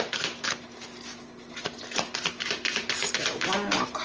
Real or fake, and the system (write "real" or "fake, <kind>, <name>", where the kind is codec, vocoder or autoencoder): real